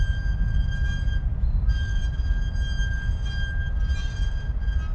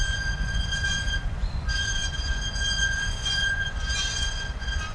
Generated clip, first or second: second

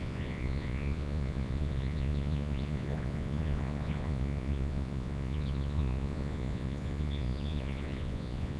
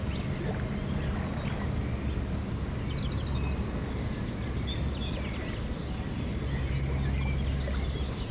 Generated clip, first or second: first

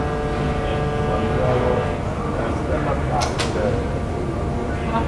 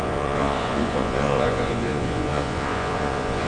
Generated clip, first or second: second